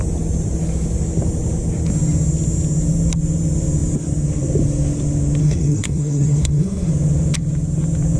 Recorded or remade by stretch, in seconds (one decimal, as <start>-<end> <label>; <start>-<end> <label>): 0.0-5.4 recorded; 5.4-6.9 remade; 6.9-8.2 recorded